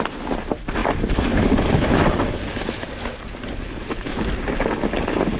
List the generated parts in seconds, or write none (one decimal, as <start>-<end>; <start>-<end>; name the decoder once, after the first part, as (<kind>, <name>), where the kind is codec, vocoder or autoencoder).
none